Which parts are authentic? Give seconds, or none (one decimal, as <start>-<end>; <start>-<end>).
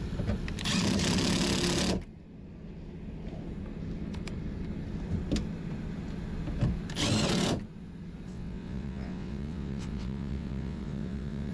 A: 0.0-8.3